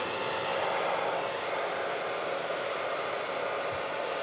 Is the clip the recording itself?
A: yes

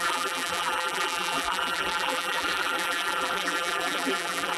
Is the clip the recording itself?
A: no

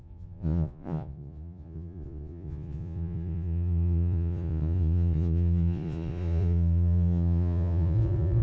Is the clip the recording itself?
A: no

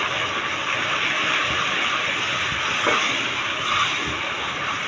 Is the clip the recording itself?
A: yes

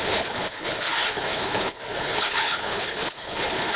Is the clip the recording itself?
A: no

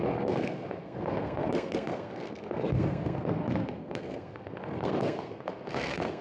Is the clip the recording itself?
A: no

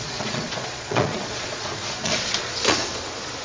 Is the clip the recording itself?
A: no